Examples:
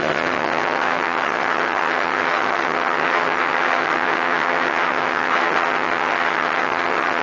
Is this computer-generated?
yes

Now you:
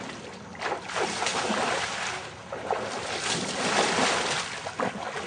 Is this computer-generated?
no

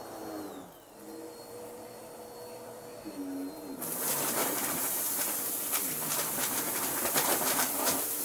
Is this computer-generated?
yes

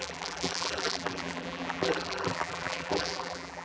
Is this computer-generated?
yes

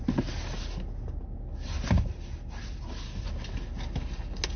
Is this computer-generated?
no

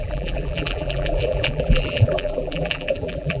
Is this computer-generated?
yes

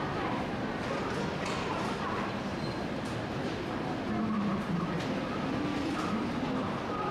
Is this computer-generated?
no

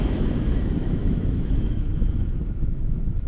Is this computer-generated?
yes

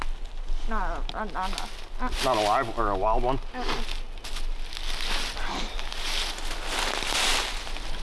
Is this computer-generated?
no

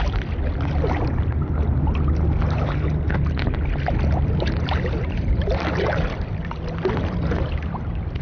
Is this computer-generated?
no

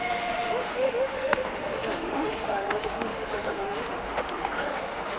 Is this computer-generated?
yes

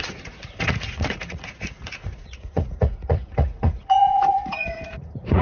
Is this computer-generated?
yes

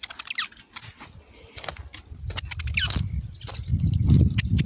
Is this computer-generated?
no